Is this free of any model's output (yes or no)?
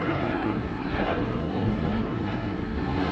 no